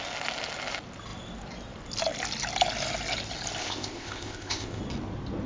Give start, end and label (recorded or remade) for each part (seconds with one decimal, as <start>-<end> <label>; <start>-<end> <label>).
0.0-3.6 recorded; 3.6-4.8 remade; 4.8-5.5 recorded